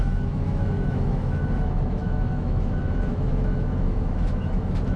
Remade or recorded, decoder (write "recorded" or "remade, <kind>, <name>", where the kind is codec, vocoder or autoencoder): remade, autoencoder, DAC-VAE